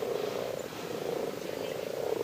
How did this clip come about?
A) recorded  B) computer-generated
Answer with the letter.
B